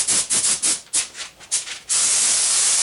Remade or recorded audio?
recorded